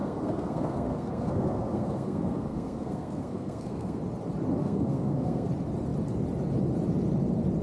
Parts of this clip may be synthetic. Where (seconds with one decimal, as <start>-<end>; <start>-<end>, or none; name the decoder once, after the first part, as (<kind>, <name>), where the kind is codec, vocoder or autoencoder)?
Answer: 0.0-4.0 (codec, SNAC); 4.6-5.5